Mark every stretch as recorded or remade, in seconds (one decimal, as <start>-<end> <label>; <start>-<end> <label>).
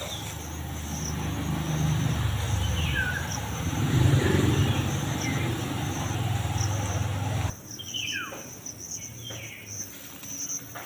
0.0-3.3 recorded; 3.3-4.1 remade; 4.1-10.9 recorded